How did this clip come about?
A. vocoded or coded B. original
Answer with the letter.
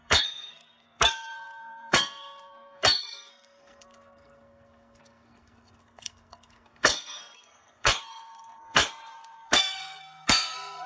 A